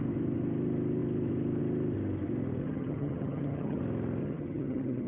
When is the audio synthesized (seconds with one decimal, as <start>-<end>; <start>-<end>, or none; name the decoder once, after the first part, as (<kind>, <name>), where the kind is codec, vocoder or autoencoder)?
2.6-3.8 (vocoder, HiFi-GAN); 4.2-5.1